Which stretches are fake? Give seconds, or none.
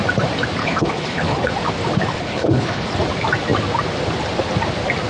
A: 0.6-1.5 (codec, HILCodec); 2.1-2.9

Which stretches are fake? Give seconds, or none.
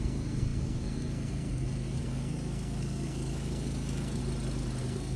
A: 0.0-4.2 (codec, SNAC); 4.8-5.2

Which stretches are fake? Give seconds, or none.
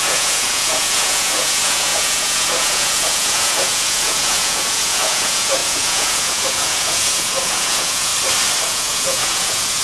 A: 0.0-8.1 (vocoder, Vocos); 8.6-9.8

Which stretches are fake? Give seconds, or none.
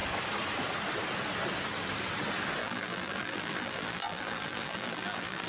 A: 2.6-5.5 (vocoder, BigVGAN v2)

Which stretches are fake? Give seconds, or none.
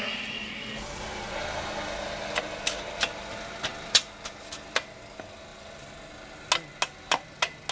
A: none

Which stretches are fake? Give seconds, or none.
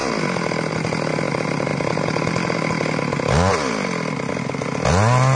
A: none